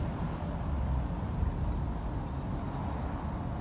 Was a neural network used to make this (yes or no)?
no